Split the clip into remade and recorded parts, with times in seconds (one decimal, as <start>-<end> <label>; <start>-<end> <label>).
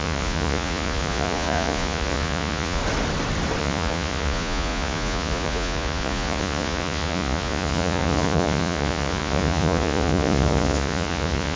0.0-2.8 remade; 2.8-3.6 recorded; 3.6-11.6 remade